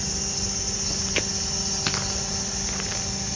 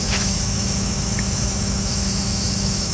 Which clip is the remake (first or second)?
second